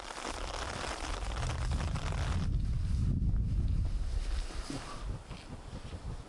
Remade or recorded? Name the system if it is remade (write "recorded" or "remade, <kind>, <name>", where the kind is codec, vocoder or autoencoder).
recorded